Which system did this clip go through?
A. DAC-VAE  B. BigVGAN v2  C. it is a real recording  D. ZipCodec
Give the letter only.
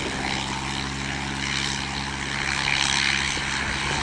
C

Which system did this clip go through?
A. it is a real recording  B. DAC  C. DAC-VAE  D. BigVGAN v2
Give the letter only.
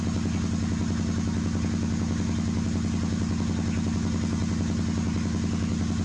A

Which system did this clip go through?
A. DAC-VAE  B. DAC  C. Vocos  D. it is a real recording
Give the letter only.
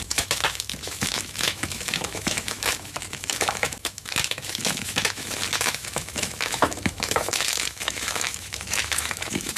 A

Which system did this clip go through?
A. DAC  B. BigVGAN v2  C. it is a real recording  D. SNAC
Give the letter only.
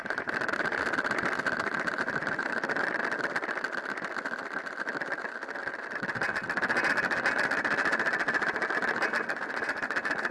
C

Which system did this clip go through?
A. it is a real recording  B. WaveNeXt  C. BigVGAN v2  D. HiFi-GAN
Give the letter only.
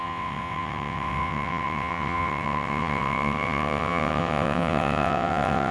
B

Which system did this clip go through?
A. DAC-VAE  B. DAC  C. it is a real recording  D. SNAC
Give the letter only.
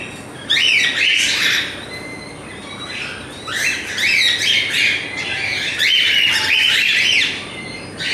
C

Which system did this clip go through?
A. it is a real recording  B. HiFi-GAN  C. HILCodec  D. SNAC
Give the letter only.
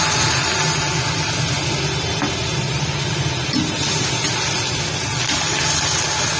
A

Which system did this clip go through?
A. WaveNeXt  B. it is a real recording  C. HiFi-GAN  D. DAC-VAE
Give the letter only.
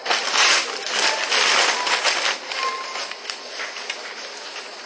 B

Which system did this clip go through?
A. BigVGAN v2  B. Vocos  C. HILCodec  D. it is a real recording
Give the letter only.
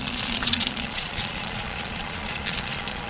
B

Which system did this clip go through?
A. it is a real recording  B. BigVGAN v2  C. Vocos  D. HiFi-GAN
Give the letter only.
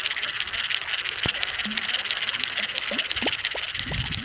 A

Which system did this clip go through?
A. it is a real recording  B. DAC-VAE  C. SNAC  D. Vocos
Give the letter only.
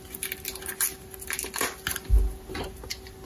A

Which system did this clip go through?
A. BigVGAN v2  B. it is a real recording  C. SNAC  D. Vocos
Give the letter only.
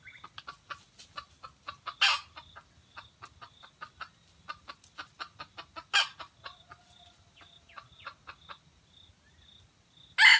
B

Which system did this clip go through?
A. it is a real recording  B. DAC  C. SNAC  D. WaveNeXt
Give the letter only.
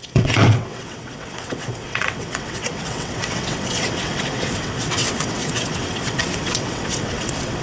D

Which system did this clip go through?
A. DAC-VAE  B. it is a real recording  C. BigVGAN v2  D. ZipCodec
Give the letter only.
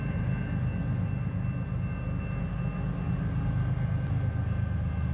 B